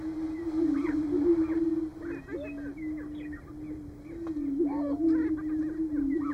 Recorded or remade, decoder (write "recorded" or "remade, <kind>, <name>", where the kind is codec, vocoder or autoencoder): recorded